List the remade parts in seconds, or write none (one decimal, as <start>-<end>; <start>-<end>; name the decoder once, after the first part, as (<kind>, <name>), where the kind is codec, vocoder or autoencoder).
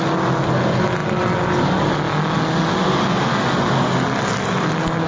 none